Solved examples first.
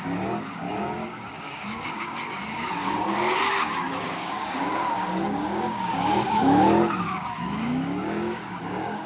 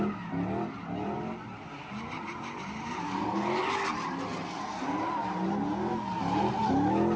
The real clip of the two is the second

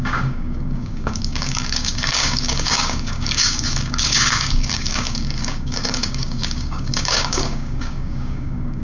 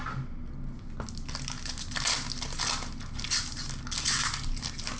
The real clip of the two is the second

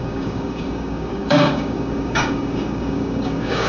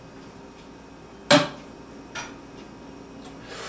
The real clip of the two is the second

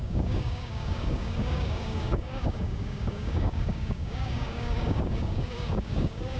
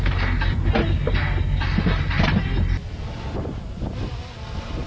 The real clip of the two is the second